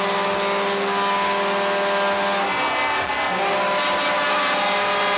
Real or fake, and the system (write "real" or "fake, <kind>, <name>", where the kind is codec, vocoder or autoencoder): real